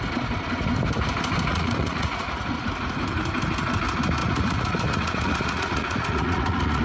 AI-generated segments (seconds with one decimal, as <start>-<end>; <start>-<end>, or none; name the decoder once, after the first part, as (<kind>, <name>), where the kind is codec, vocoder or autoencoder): 1.5-2.7 (vocoder, Vocos); 4.2-6.8